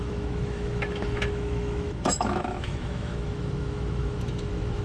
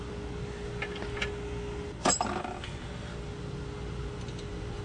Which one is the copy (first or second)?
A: first